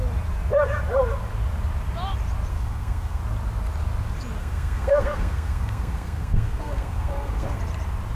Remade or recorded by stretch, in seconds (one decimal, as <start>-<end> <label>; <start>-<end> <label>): 0.0-2.5 recorded; 2.5-3.2 remade; 3.2-4.4 recorded; 4.4-7.6 remade; 7.6-8.1 recorded